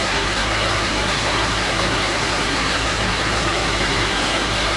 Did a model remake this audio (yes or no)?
yes